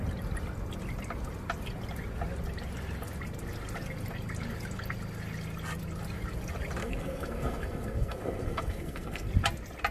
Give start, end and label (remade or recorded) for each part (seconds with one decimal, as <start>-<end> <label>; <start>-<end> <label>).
0.0-6.8 recorded; 6.8-9.3 remade; 9.3-9.9 recorded